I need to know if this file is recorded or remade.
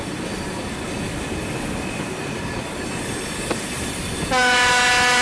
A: recorded